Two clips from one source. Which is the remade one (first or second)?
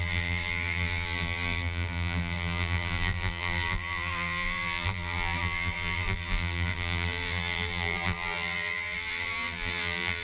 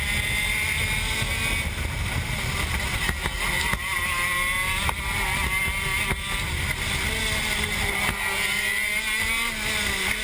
first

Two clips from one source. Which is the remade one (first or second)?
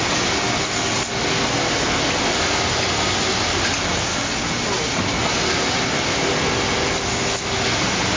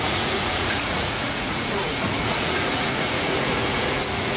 second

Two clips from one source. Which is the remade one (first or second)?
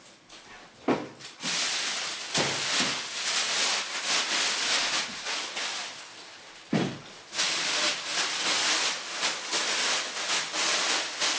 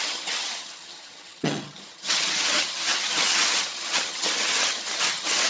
second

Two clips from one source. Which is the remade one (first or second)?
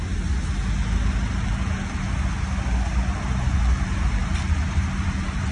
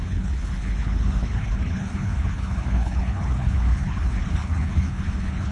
second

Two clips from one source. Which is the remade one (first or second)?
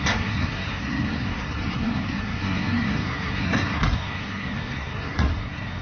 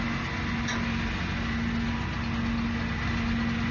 first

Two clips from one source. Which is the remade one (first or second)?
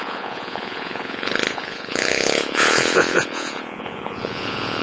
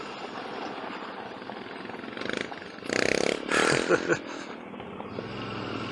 first